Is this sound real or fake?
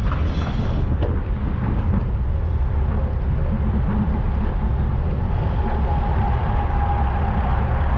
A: real